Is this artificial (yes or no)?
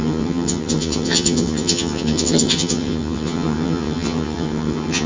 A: yes